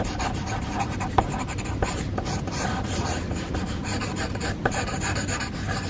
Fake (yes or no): yes